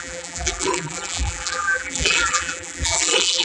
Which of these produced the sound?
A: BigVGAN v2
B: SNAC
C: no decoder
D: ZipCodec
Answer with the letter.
A